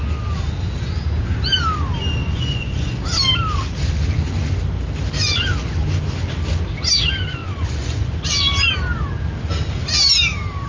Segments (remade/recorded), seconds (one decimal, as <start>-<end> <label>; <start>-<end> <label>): 0.0-2.2 recorded; 2.2-3.0 remade; 3.0-7.4 recorded; 7.4-8.2 remade; 8.2-10.7 recorded